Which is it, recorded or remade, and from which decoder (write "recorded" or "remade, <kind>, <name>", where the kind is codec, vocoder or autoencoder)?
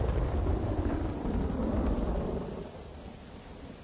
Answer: recorded